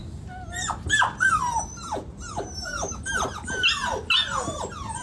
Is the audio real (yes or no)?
yes